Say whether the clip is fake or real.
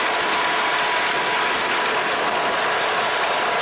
real